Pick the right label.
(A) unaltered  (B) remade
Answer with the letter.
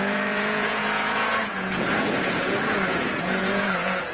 B